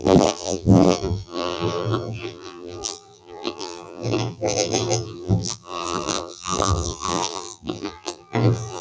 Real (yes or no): no